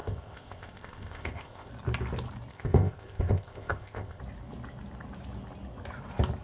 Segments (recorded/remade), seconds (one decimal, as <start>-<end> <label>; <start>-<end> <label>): 0.0-1.7 remade; 1.7-2.5 recorded; 2.5-4.2 remade; 4.2-6.4 recorded